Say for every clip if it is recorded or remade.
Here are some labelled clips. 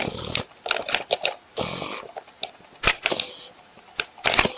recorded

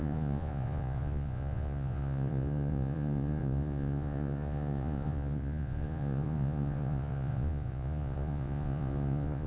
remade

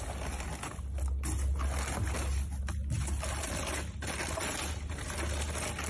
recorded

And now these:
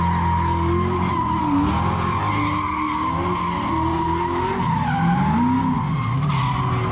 recorded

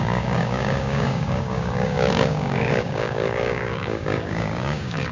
remade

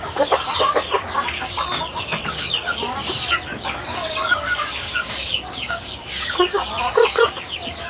remade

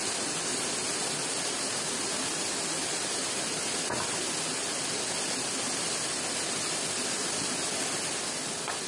recorded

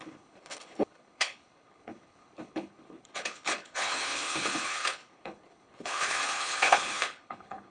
remade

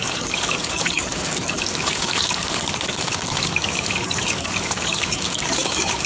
remade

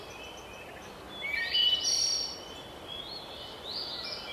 recorded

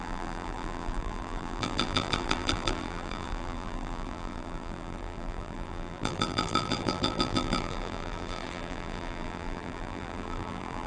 remade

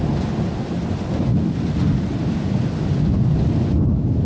recorded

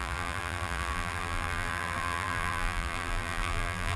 remade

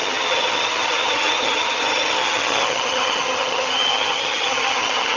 remade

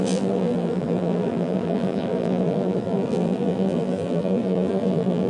remade